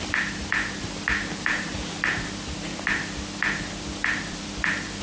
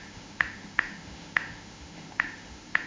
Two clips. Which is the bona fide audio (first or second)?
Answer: first